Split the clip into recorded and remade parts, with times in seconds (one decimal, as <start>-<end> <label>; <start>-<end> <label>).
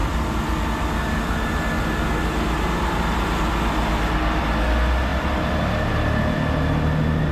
0.0-7.3 recorded